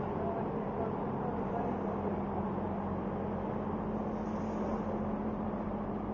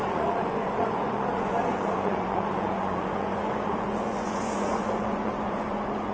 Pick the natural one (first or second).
first